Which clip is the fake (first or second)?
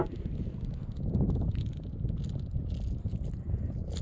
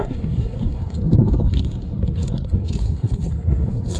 second